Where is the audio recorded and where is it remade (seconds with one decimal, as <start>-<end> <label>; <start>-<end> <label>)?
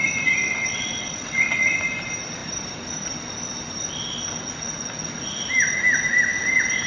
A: 0.0-0.4 recorded; 0.4-1.8 remade; 1.8-6.9 recorded